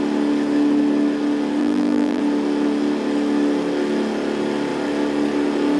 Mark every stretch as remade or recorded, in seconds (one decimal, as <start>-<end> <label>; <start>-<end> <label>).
0.0-1.6 recorded; 1.6-2.2 remade; 2.2-5.8 recorded